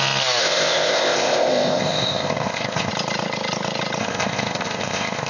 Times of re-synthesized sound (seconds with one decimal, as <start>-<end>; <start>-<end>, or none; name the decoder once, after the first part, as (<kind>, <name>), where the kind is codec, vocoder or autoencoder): 0.4-2.9 (codec, ZipCodec); 4.0-5.3

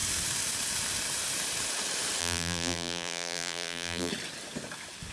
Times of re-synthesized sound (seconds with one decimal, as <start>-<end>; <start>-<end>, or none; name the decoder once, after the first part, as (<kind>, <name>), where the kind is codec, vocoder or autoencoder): 2.2-4.1 (vocoder, BigVGAN v2)